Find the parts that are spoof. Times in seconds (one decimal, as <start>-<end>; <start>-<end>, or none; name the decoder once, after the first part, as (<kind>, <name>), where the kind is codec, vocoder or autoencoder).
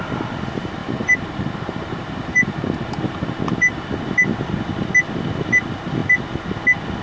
0.8-3.9 (vocoder, BigVGAN v2)